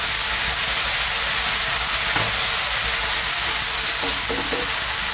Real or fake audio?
real